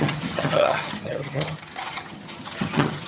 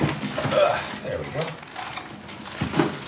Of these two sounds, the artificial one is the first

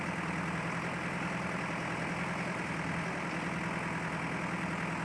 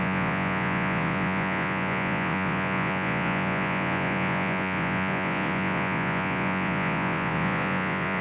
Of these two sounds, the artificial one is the second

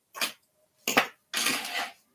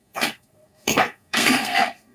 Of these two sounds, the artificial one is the second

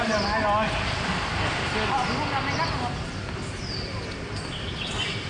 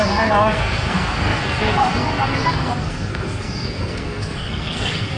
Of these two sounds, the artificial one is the second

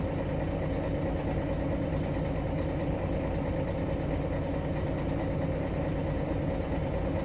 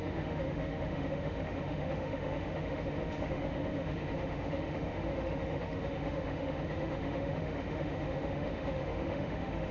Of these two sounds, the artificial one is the second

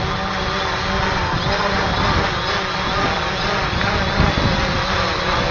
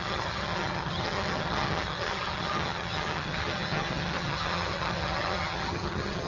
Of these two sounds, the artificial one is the second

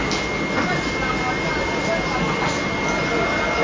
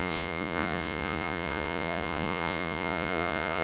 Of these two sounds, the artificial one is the second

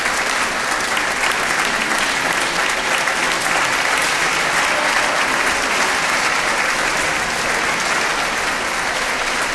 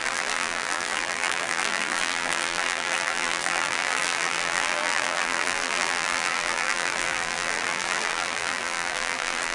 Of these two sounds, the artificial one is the second